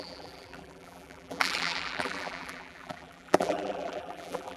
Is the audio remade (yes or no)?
yes